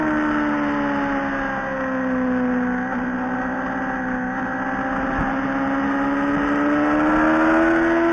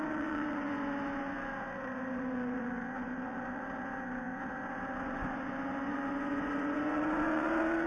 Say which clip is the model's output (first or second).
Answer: second